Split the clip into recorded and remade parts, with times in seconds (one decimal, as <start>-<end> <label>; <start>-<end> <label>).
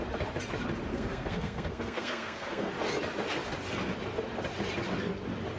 0.0-0.9 recorded; 0.9-2.7 remade; 2.7-5.6 recorded